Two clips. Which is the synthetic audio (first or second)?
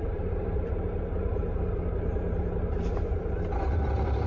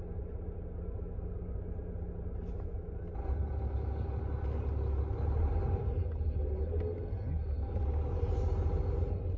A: first